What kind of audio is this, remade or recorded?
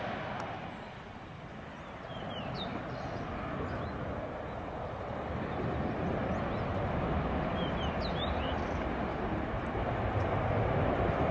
recorded